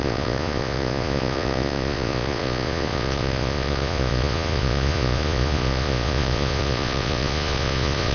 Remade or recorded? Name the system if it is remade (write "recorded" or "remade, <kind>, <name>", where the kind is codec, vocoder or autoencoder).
remade, vocoder, Vocos